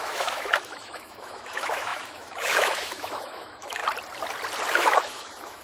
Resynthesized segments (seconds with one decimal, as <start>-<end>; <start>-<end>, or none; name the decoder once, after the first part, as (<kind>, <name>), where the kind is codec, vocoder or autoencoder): 0.0-3.8 (autoencoder, DAC-VAE); 4.7-5.6